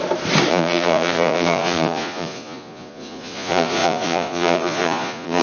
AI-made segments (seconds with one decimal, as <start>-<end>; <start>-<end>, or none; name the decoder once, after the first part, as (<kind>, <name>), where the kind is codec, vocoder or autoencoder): 0.5-5.4 (vocoder, Vocos)